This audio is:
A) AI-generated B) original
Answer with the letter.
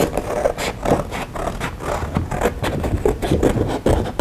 B